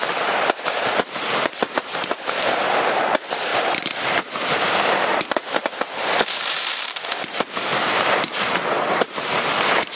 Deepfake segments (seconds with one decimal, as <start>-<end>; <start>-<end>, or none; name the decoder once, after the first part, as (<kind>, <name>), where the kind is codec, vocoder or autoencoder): 0.0-10.0 (vocoder, BigVGAN v2)